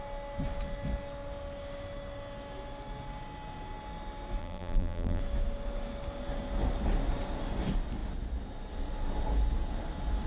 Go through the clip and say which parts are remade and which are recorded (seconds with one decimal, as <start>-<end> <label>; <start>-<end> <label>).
0.0-4.4 recorded; 4.4-5.2 remade; 5.2-10.3 recorded